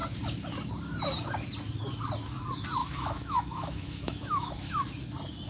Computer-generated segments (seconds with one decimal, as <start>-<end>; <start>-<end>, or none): 2.8-4.7